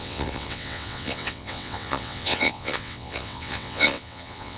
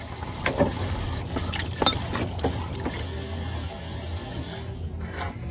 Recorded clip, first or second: second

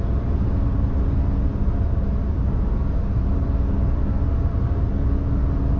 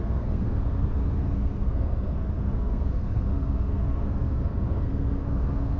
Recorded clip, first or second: first